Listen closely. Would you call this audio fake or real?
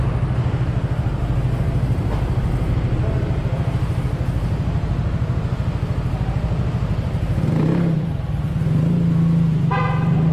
real